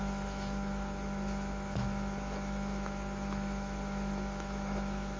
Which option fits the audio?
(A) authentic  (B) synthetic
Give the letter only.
B